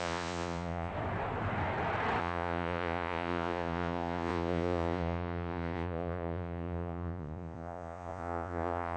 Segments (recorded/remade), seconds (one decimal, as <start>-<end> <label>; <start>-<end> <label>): 0.0-0.9 remade; 0.9-2.2 recorded; 2.2-9.0 remade